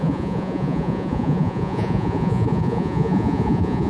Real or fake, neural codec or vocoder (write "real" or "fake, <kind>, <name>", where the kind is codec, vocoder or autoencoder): fake, vocoder, Vocos